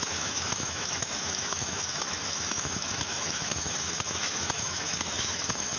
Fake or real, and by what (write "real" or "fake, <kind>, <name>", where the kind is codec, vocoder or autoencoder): fake, autoencoder, DAC-VAE